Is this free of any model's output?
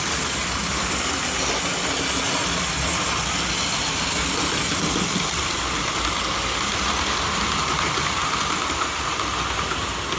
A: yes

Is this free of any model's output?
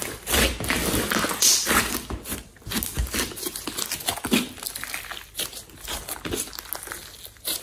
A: yes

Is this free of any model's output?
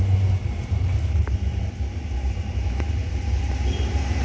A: no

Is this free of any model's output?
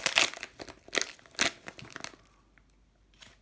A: yes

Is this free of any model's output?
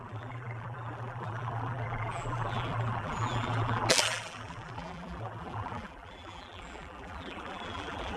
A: no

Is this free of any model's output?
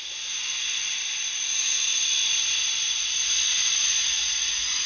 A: yes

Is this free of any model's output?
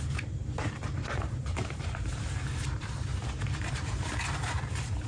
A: no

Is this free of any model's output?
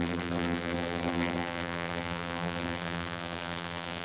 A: no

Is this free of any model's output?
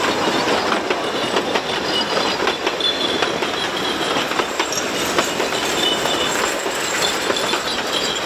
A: no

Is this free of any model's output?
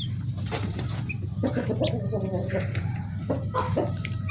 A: no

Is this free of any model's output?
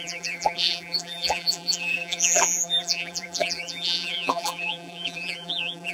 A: no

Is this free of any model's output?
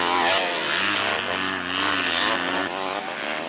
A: yes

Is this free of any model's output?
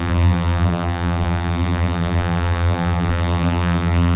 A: no